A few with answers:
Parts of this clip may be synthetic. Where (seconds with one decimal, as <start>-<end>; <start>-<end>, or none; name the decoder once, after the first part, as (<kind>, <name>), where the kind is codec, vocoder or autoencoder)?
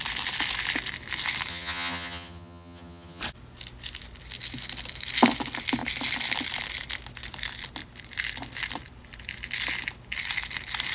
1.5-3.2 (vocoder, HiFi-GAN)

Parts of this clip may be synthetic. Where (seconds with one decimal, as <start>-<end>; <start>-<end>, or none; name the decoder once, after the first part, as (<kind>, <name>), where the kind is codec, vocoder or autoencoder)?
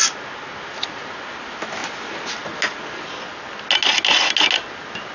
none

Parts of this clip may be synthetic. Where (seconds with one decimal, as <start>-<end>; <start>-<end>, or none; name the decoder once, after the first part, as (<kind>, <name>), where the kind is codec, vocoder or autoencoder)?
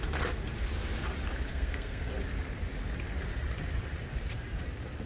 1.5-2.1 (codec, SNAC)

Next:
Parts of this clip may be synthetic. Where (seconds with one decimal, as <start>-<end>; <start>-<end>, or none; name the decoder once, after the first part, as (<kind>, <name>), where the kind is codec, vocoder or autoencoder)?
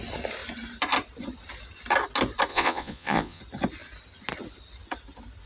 2.5-3.4 (vocoder, Vocos)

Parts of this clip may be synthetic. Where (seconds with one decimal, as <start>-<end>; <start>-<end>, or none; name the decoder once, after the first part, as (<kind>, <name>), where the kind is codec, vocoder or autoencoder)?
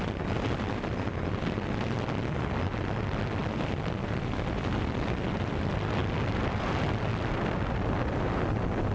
none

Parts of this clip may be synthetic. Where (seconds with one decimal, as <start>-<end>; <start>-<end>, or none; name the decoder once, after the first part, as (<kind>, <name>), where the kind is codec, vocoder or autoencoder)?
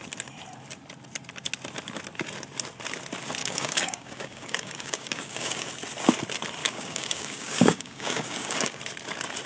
3.4-5.7 (codec, DAC); 6.6-8.8